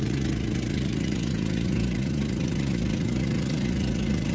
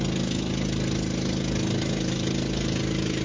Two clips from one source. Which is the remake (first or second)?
first